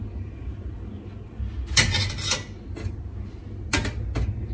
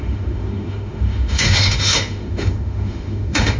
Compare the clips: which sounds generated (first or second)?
second